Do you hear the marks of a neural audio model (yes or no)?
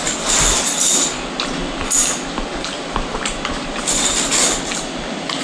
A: no